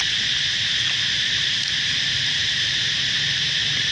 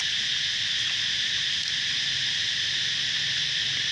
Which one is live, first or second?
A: second